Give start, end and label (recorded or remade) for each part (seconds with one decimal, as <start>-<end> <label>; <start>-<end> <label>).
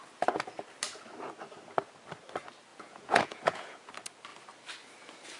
0.0-2.7 recorded; 2.7-3.9 remade; 3.9-5.4 recorded